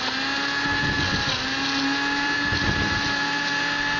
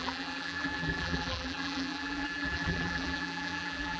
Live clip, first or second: first